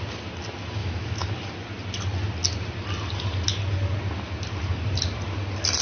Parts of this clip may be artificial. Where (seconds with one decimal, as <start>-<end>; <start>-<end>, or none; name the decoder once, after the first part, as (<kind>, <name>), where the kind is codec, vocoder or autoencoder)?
0.8-1.3 (autoencoder, DAC-VAE)